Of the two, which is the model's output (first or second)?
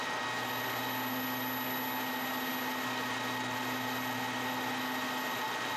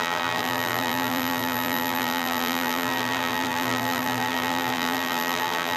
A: second